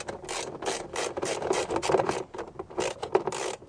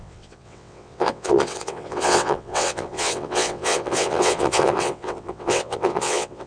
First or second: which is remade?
second